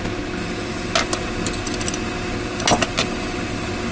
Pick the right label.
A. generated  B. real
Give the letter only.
B